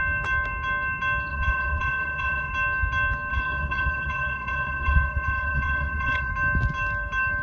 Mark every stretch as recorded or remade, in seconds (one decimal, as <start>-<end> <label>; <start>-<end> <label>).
0.0-1.3 recorded; 1.3-2.5 remade; 2.5-3.3 recorded; 3.3-6.3 remade; 6.3-7.4 recorded